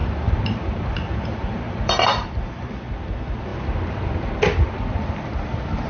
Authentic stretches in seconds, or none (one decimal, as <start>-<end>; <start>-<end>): 2.7-5.9